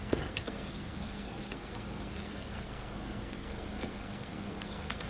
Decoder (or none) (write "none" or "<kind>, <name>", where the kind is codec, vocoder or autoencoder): codec, SNAC